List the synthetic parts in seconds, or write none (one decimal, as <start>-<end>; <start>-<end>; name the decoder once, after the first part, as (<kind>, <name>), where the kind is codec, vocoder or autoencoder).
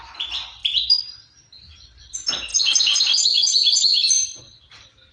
0.0-5.1 (vocoder, BigVGAN v2)